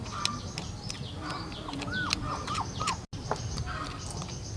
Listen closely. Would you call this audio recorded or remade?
recorded